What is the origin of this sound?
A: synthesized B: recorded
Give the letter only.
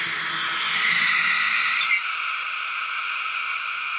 B